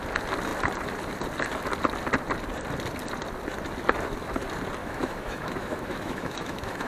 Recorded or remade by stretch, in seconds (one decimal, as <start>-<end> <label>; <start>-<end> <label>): 0.0-4.8 recorded; 4.8-6.9 remade